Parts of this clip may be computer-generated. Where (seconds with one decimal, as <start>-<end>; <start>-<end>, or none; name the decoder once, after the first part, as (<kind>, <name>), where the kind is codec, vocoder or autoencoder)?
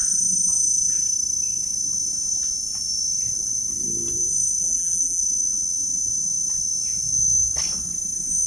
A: 4.6-5.2 (vocoder, BigVGAN v2)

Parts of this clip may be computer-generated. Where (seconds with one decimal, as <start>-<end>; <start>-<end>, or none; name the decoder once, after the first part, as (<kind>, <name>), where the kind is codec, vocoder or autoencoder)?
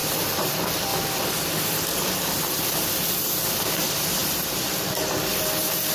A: 0.0-0.5 (vocoder, BigVGAN v2); 0.9-2.7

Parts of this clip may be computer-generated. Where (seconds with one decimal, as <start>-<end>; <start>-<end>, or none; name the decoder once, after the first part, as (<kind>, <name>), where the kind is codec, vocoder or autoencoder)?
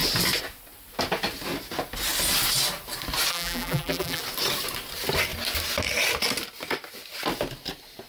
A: 3.3-4.2 (vocoder, BigVGAN v2)